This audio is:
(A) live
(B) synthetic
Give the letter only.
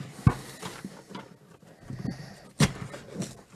A